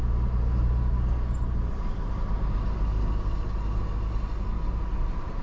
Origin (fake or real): real